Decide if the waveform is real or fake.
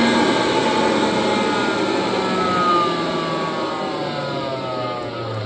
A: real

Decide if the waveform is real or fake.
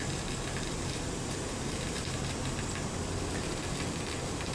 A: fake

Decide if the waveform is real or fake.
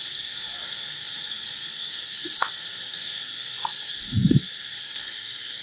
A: fake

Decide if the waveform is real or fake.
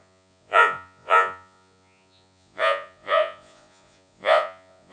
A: fake